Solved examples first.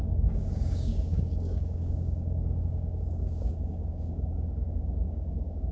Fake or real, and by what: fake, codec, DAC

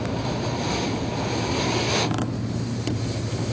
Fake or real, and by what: real